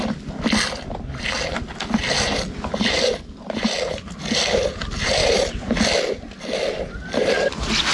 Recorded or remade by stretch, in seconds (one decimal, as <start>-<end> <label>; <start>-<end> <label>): 0.0-5.2 recorded; 5.2-5.8 remade; 5.8-7.9 recorded